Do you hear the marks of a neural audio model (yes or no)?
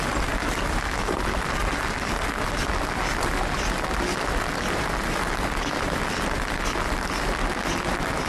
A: no